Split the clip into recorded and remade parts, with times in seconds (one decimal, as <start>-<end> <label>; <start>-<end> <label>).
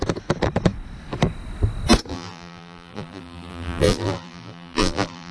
0.0-2.1 recorded; 2.1-5.3 remade